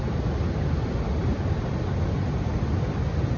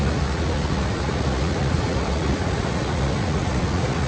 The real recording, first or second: first